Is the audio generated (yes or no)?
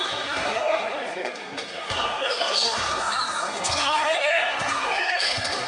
yes